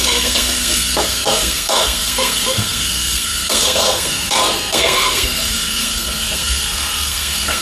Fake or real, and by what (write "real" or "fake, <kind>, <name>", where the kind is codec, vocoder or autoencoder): fake, codec, SNAC